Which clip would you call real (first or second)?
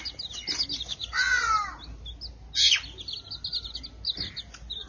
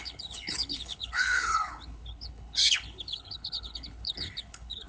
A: first